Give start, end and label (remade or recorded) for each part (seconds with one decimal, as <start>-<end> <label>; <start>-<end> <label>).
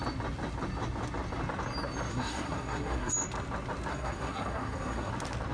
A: 0.0-2.1 recorded; 2.1-3.1 remade; 3.1-3.9 recorded; 3.9-5.1 remade; 5.1-5.5 recorded